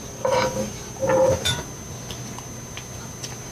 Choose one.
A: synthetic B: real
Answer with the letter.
B